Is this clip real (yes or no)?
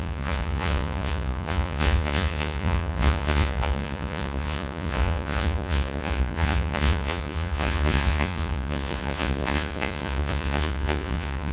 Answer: no